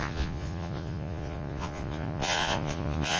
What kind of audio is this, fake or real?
fake